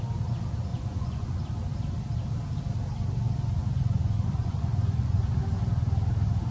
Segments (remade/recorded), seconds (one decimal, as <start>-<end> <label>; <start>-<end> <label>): 0.0-0.7 recorded; 0.7-1.3 remade; 1.3-3.6 recorded; 3.6-5.3 remade; 5.3-6.5 recorded